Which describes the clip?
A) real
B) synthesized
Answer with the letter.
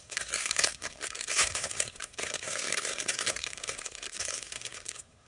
B